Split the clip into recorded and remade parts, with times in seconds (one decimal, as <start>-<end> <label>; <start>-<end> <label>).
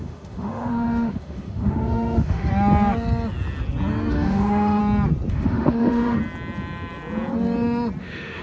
0.0-2.5 remade; 2.5-4.1 recorded; 4.1-4.8 remade; 4.8-5.3 recorded; 5.3-6.2 remade; 6.2-8.0 recorded; 8.0-8.4 remade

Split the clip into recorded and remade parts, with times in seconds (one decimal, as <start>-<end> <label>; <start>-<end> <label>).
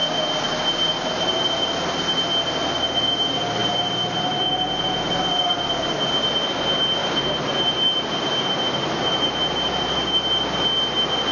0.0-3.6 recorded; 3.6-5.4 remade; 5.4-7.0 recorded; 7.0-10.4 remade; 10.4-11.3 recorded